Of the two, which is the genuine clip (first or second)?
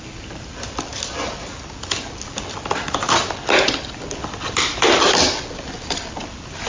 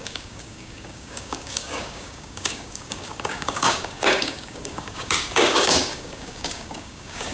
first